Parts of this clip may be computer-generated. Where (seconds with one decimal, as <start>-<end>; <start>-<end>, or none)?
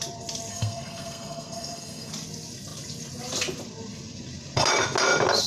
0.5-2.1